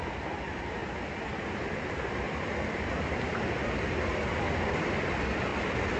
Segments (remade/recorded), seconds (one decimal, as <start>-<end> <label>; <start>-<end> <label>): 0.0-6.0 recorded

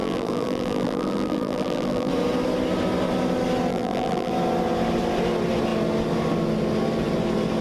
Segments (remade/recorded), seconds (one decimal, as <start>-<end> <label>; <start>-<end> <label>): 0.0-2.1 remade; 2.1-3.7 recorded; 3.7-4.3 remade; 4.3-7.6 recorded